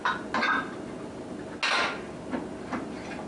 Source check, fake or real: real